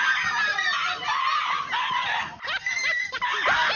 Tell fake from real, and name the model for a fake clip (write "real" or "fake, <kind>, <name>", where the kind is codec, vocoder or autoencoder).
real